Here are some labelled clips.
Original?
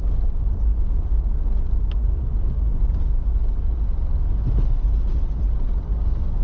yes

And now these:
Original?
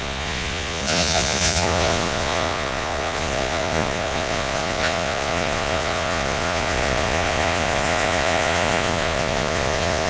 no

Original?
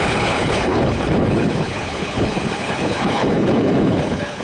no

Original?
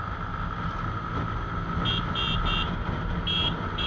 yes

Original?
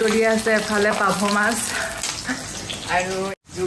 yes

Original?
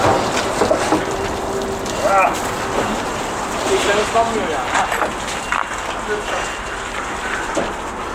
yes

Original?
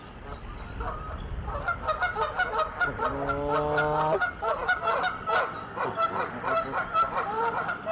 yes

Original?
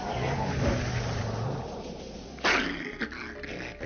yes